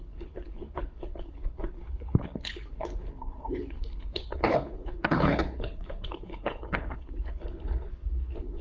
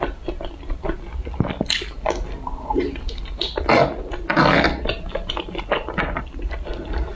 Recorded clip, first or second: second